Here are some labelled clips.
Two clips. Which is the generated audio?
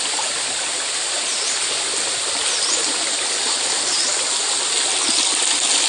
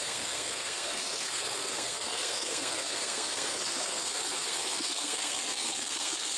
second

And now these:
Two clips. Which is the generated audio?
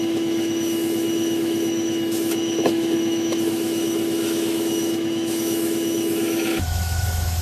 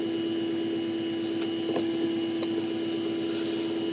first